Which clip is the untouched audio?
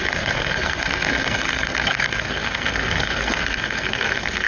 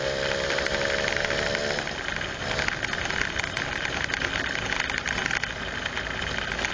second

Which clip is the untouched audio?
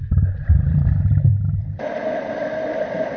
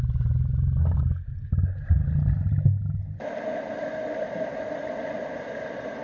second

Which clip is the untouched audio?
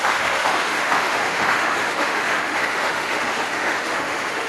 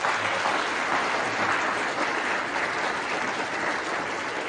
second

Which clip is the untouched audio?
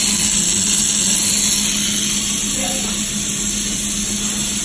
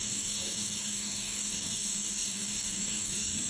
first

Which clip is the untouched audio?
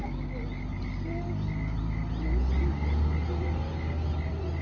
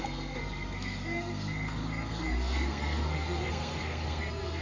first